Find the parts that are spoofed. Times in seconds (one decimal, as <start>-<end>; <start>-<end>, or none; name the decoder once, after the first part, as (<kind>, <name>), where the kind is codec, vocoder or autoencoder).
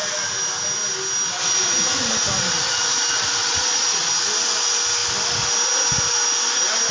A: 3.4-4.1 (vocoder, Vocos)